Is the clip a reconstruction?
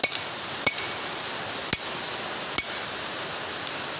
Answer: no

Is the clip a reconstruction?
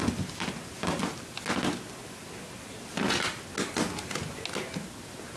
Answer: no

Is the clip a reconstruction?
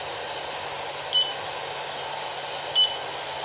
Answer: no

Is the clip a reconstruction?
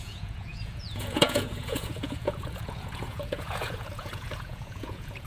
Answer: yes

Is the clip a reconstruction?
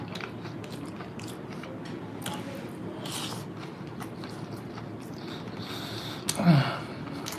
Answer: no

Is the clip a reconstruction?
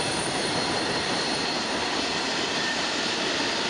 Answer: yes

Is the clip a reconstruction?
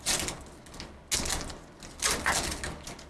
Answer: no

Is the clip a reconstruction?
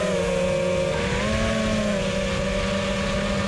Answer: no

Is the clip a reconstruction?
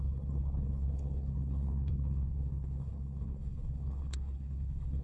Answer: yes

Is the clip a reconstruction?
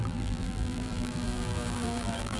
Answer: yes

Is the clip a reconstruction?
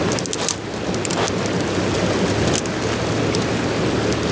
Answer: no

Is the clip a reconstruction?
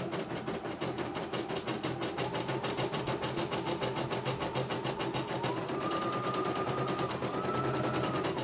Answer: no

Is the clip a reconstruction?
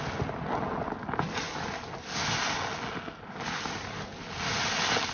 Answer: no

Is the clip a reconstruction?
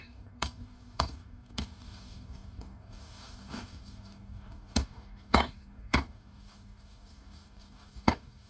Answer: yes